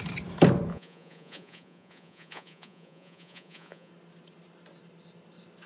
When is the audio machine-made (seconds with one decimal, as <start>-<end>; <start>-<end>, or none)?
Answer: 0.7-3.9